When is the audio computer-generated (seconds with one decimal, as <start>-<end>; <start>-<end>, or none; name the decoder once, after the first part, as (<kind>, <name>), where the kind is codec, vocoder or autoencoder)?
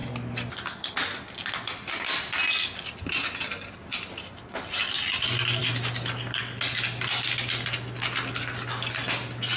none